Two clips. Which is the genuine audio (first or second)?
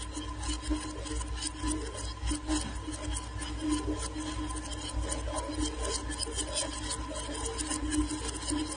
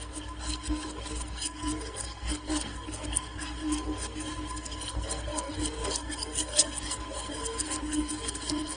first